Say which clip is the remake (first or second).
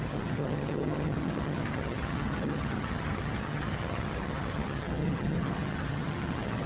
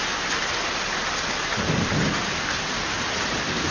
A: first